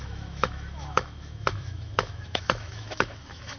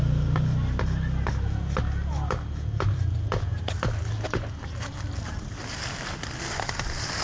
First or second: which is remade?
first